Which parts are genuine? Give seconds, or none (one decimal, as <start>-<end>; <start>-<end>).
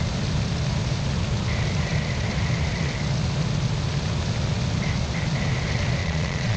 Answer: 0.0-6.0